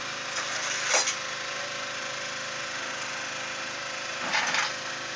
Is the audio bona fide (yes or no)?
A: yes